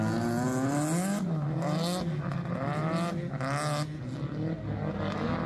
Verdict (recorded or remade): recorded